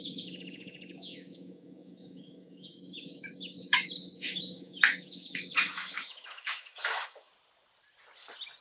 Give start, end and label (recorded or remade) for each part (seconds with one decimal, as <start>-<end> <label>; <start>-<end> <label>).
0.0-7.3 remade; 7.3-8.6 recorded

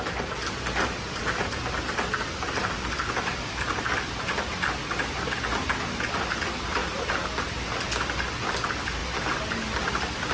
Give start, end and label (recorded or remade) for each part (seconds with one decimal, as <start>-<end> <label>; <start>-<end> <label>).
0.0-10.3 recorded

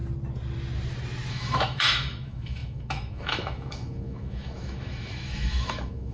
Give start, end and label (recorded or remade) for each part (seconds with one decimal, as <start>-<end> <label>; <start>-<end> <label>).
0.0-1.3 recorded; 1.3-6.1 remade